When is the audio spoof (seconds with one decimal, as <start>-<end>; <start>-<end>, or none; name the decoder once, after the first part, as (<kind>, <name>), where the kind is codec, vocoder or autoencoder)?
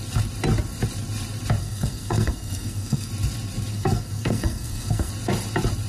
1.6-3.1 (codec, SNAC); 3.7-5.1